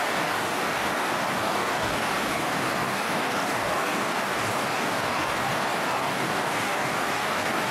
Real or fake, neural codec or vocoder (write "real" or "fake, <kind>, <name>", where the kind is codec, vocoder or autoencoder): fake, codec, DAC